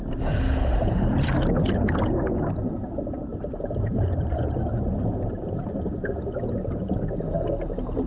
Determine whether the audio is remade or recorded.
recorded